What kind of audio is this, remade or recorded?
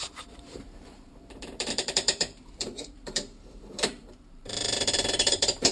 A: remade